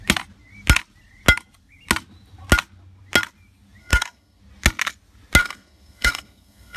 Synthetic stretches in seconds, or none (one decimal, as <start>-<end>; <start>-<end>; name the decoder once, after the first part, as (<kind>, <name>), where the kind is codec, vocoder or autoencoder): 3.8-4.4 (codec, SNAC); 5.4-6.8